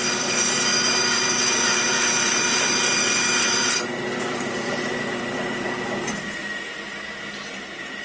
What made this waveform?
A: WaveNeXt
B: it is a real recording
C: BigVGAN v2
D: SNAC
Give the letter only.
C